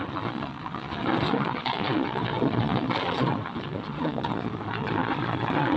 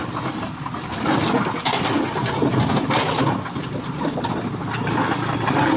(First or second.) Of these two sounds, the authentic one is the second